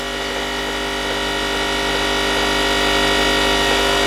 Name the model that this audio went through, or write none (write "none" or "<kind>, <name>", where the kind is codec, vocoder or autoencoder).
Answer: none